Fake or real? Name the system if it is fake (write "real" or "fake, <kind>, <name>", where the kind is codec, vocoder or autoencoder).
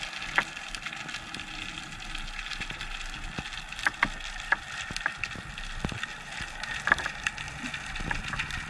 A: real